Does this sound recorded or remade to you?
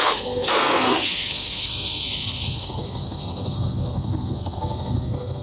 remade